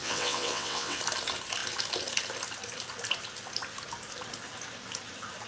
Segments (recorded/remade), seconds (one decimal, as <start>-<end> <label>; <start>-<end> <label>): 0.0-1.0 remade; 1.0-5.5 recorded